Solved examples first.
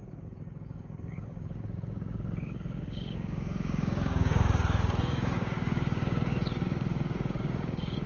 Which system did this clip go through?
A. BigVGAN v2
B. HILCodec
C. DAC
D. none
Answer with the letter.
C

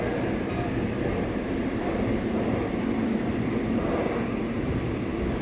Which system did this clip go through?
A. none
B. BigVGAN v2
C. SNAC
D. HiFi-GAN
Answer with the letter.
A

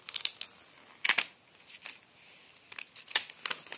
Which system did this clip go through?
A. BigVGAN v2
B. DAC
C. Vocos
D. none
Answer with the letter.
D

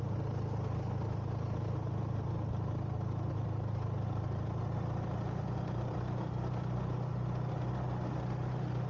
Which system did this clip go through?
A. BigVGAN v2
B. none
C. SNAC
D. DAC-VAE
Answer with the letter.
B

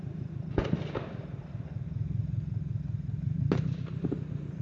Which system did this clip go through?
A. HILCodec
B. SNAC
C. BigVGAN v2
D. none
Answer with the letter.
D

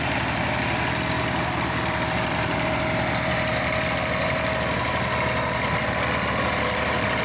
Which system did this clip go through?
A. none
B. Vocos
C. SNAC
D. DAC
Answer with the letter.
A